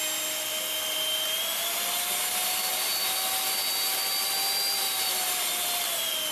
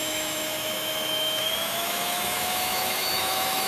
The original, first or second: first